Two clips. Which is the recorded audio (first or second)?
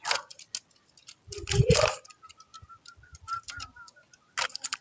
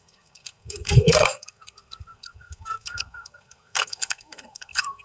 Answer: first